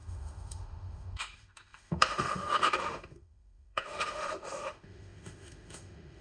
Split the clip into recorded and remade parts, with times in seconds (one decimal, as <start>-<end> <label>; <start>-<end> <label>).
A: 0.0-6.2 remade